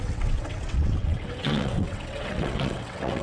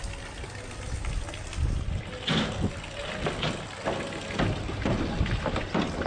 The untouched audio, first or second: second